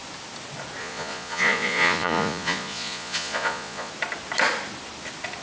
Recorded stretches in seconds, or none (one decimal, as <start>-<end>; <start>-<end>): 0.0-0.8; 3.9-5.4